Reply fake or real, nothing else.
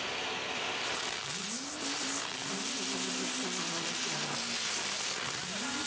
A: real